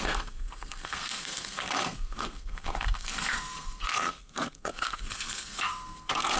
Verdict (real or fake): fake